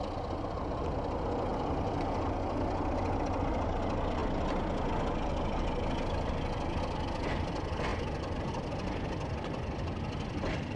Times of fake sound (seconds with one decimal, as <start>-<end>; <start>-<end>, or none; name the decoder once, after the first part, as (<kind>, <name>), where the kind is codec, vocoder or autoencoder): none